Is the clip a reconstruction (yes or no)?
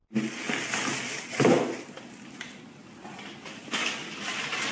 no